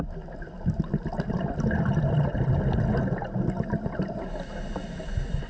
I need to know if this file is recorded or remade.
recorded